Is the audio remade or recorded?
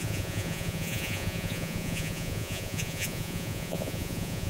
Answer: remade